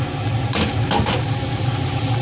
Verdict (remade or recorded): recorded